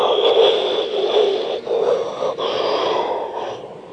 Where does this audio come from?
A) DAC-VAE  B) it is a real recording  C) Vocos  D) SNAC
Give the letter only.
B